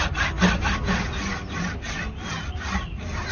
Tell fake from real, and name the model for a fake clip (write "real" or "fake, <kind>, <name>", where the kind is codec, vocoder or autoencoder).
real